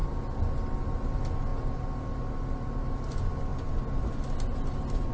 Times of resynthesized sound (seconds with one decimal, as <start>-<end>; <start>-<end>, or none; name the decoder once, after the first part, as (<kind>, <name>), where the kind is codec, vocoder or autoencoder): 0.0-0.9 (vocoder, BigVGAN v2)